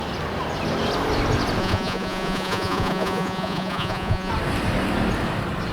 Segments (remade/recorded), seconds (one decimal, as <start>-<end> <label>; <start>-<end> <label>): 0.0-1.6 recorded; 1.6-4.3 remade; 4.3-5.7 recorded